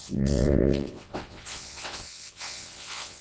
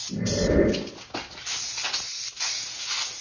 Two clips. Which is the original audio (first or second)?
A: second